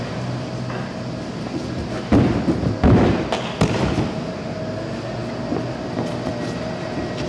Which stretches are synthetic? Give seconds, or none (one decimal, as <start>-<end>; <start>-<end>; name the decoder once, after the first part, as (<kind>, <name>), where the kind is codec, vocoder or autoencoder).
none